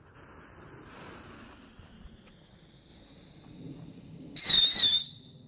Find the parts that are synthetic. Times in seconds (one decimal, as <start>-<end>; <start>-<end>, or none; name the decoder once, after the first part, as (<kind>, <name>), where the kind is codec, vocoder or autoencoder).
2.9-4.4 (vocoder, BigVGAN v2)